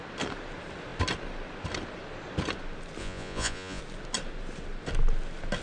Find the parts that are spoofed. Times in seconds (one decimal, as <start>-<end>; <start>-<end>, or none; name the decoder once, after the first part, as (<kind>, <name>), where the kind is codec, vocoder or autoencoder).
3.0-3.8 (vocoder, Vocos)